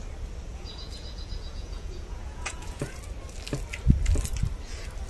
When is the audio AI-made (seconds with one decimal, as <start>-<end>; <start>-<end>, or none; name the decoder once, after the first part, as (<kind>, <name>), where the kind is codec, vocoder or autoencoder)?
0.5-3.0 (vocoder, Vocos)